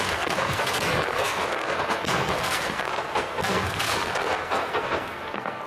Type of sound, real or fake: fake